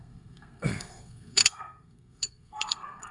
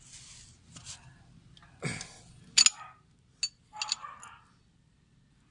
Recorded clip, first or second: second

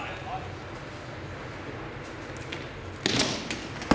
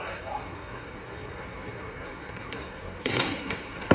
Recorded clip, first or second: first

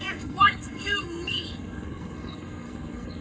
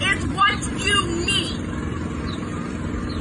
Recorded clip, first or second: second